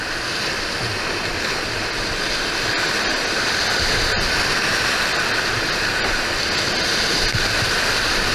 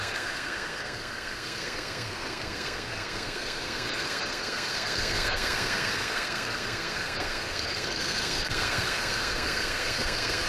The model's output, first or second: second